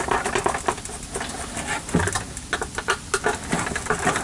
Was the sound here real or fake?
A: real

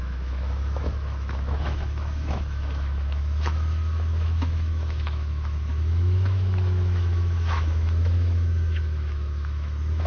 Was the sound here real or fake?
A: fake